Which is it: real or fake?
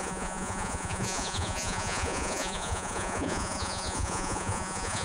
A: fake